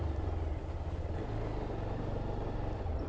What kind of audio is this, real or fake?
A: real